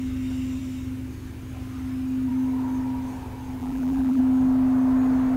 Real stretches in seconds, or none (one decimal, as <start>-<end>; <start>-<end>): 0.0-3.6; 4.2-5.4